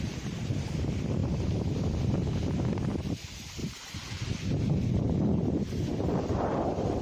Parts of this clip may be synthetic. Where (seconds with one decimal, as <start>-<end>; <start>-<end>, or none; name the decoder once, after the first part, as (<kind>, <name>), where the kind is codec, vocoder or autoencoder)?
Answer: 0.0-1.2 (vocoder, BigVGAN v2); 3.0-3.6; 4.2-7.0